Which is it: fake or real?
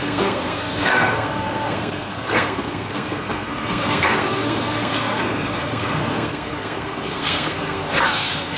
fake